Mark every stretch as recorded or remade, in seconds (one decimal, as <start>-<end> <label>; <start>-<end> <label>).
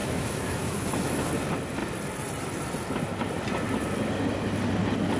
0.0-1.3 remade; 1.3-5.2 recorded